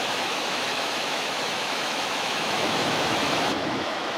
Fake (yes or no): yes